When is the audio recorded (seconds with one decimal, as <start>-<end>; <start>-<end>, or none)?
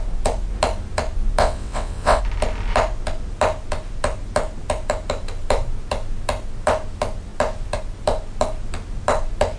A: 0.0-1.4; 2.2-9.6